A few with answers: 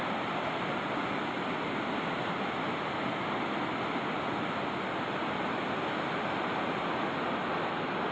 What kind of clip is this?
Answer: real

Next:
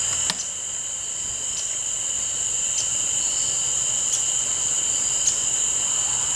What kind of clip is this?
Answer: real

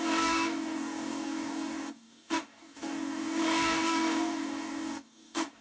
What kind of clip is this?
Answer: fake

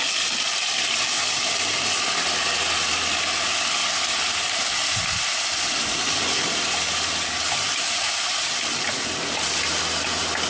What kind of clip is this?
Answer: real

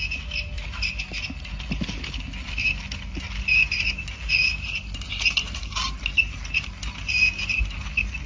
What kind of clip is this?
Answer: real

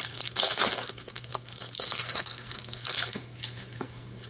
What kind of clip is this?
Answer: fake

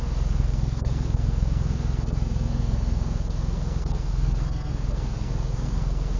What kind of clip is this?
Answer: fake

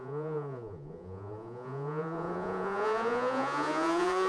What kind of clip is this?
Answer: fake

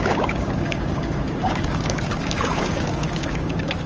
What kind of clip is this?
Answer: fake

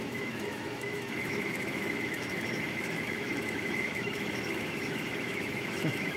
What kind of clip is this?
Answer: fake